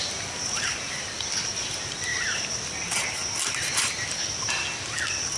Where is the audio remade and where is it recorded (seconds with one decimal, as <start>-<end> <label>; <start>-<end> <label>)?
0.0-5.4 recorded